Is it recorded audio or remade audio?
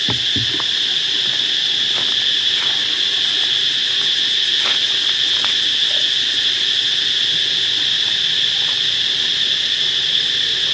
recorded